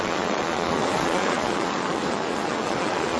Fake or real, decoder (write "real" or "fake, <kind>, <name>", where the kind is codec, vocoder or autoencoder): fake, vocoder, Vocos